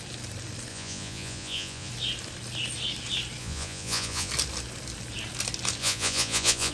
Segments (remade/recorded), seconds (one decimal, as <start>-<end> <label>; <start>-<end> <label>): 0.0-0.7 recorded; 0.7-1.9 remade; 1.9-3.4 recorded; 3.4-4.3 remade; 4.3-5.8 recorded; 5.8-6.7 remade